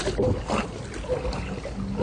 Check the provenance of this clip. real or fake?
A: real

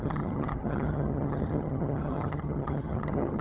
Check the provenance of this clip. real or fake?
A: fake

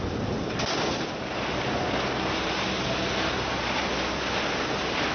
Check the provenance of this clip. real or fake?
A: real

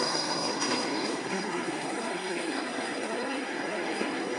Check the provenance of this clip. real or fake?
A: fake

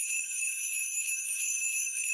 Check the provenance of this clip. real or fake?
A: fake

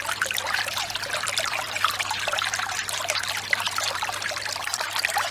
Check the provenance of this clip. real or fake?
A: fake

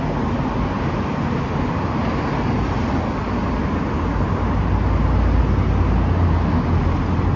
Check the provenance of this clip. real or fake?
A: real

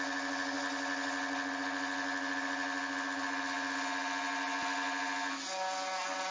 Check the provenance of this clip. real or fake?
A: real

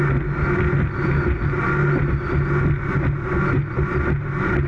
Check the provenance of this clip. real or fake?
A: real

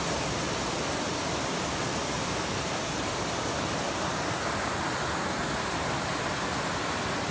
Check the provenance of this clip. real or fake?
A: real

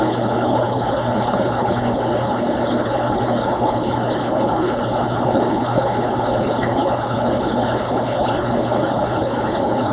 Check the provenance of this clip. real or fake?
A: fake